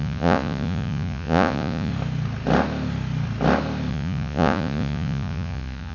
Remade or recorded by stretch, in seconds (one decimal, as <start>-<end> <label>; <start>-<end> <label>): 0.0-1.9 remade; 1.9-3.9 recorded; 3.9-5.9 remade